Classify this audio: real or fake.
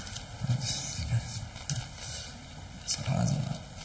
real